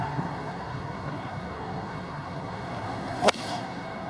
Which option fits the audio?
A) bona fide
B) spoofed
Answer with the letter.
B